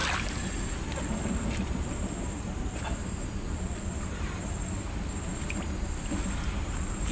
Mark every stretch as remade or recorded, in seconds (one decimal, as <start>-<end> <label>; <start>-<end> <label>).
0.0-7.1 recorded